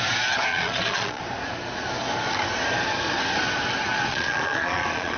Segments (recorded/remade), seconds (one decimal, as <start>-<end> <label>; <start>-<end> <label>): 0.0-0.5 recorded; 0.5-1.2 remade; 1.2-4.1 recorded; 4.1-5.2 remade